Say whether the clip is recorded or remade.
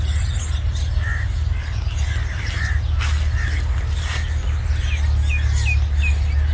recorded